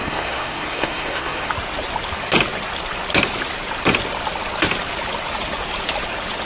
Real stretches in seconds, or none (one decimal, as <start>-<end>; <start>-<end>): 1.5-6.5